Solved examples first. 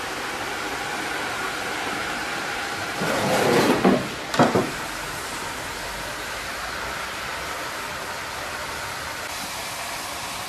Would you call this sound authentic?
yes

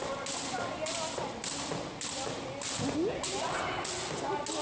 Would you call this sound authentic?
yes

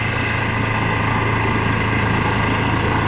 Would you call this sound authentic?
yes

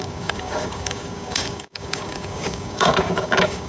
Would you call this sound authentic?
no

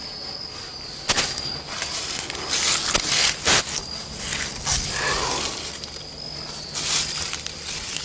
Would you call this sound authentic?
yes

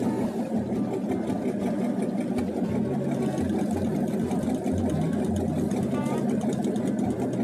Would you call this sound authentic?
yes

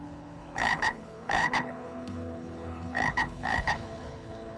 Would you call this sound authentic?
no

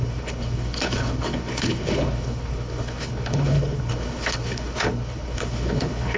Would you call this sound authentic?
no